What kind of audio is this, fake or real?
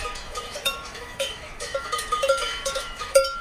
fake